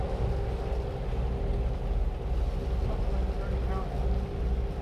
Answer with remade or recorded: recorded